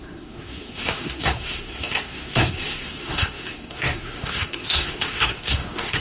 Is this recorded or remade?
remade